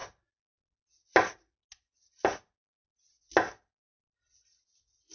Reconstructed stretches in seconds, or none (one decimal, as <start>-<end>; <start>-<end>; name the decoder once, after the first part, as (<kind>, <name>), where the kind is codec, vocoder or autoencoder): none